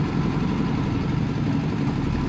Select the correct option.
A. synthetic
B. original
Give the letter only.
B